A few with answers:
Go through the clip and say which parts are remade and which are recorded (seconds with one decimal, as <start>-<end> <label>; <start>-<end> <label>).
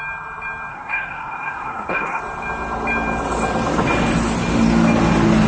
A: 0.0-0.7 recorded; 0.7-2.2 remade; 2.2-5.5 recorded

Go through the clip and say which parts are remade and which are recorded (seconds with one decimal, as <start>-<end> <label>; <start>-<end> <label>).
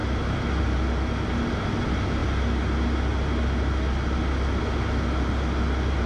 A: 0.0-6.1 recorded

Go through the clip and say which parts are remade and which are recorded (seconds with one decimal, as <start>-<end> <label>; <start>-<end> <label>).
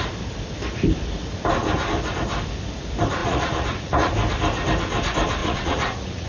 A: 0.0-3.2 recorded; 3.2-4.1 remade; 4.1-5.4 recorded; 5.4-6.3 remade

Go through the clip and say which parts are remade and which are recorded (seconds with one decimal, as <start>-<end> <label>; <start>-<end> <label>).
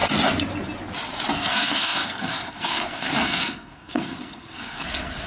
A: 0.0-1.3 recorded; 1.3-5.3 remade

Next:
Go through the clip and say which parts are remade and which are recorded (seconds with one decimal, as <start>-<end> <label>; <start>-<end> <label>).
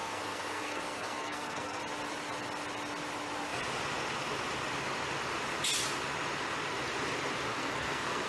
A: 0.0-1.8 remade; 1.8-7.5 recorded; 7.5-8.3 remade